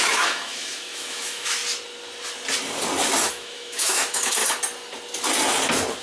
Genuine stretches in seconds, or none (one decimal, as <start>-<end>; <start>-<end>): 1.6-3.3; 4.4-6.0